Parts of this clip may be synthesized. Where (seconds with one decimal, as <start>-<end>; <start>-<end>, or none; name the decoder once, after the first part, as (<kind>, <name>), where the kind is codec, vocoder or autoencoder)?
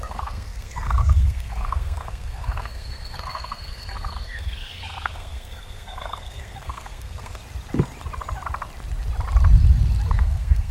0.0-7.4 (codec, SNAC); 10.1-10.7